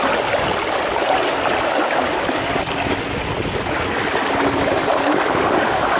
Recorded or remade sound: recorded